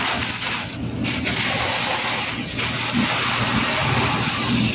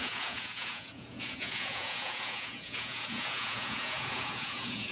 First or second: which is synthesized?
second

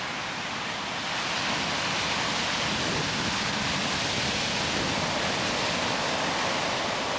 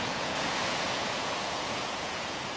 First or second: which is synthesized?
second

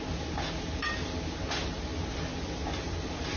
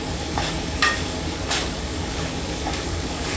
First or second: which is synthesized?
second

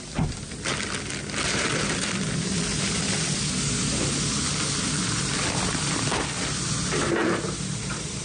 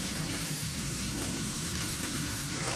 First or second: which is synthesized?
second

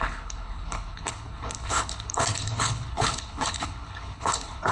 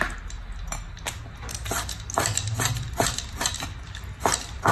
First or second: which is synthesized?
first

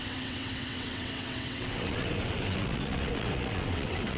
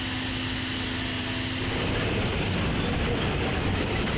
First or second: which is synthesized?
first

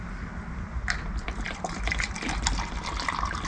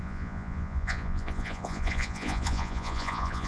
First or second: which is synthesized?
second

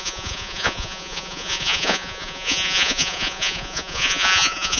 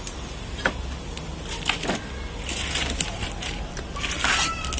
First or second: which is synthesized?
first